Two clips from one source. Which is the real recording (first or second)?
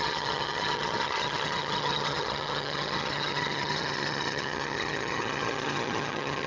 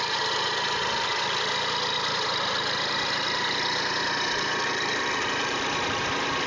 second